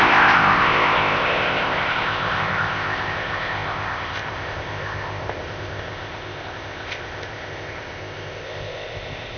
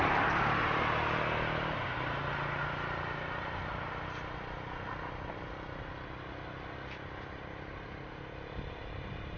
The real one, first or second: second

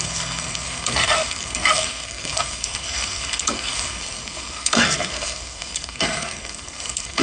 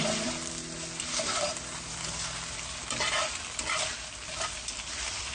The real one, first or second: second